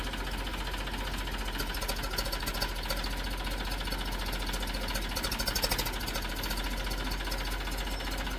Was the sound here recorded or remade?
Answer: recorded